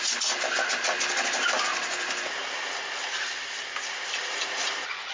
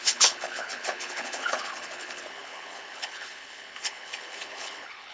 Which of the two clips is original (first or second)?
first